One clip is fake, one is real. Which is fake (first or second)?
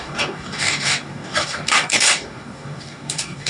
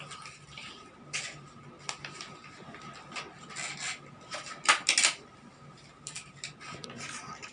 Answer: first